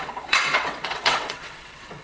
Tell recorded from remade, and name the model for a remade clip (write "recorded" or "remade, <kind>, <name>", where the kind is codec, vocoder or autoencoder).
remade, vocoder, WaveNeXt